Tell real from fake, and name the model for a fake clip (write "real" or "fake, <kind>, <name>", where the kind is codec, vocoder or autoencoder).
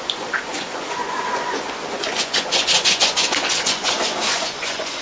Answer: fake, vocoder, Vocos